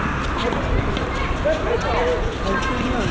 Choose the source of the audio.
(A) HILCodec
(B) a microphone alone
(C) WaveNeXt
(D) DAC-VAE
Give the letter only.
B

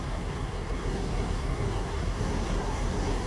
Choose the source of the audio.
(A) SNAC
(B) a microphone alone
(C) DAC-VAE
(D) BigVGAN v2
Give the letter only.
A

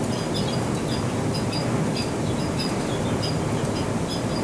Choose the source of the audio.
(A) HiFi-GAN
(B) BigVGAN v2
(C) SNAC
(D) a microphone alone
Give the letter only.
D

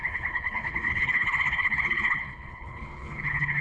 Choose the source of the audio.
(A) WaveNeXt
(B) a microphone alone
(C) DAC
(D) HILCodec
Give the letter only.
D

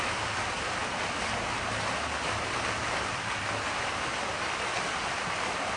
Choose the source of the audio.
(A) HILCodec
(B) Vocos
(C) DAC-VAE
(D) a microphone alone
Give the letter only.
D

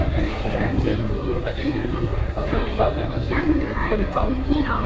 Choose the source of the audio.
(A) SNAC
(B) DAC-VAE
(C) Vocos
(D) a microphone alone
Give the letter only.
A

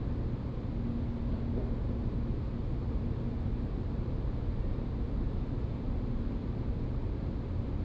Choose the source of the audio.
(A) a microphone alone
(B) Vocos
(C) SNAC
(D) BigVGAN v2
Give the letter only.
A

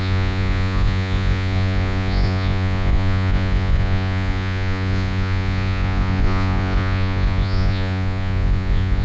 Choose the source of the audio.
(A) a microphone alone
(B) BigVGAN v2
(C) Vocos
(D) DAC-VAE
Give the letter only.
C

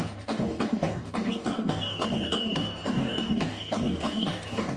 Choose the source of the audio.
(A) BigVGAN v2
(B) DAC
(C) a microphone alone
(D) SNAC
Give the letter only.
B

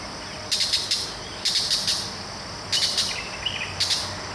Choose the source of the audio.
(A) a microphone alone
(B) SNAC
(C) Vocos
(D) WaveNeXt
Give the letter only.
A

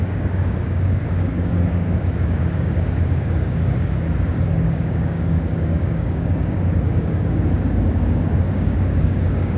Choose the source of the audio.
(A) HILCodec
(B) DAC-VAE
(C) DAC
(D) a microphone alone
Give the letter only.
C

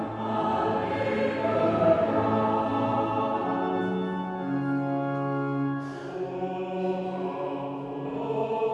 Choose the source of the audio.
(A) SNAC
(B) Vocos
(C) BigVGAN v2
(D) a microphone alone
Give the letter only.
D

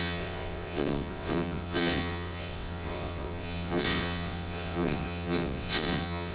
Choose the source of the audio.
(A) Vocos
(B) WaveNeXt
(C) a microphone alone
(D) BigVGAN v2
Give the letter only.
B